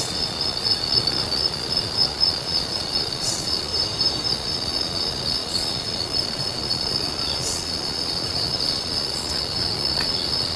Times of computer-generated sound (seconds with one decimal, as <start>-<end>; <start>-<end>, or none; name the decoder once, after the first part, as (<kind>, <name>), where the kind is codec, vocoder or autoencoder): 0.0-3.7 (vocoder, Vocos); 4.3-10.6

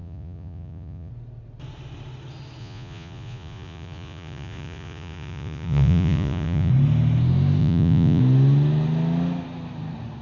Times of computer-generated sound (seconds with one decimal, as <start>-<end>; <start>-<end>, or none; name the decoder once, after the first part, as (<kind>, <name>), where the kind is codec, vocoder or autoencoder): 0.0-1.1 (vocoder, Vocos); 2.6-6.7; 7.6-8.2

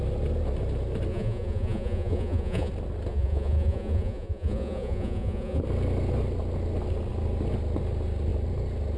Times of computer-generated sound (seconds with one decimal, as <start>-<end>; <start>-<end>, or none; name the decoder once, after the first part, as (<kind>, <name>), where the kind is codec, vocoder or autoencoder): 1.1-2.7 (vocoder, Vocos); 3.1-5.6

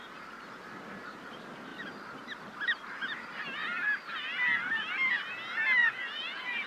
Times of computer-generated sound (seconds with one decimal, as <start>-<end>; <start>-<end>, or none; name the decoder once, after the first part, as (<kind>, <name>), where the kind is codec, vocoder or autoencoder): 5.8-6.7 (vocoder, Vocos)

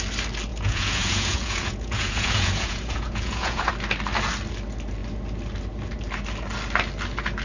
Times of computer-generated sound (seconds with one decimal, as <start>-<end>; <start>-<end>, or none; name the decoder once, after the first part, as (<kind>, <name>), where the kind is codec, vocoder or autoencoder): 0.5-3.7 (vocoder, Vocos)